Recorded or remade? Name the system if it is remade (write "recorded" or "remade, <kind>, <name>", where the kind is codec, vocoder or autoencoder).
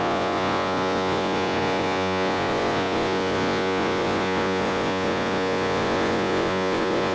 remade, vocoder, Vocos